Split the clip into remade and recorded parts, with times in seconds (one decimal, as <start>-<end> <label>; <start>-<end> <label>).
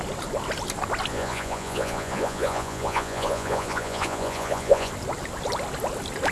0.0-1.1 recorded; 1.1-4.9 remade; 4.9-6.3 recorded